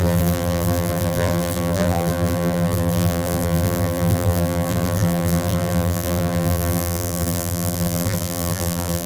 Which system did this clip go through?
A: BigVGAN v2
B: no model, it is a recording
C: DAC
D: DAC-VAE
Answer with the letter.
A